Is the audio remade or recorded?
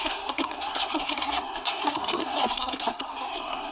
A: remade